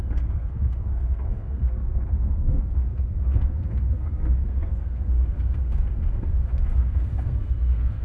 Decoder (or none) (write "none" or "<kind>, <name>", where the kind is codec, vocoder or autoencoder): codec, SNAC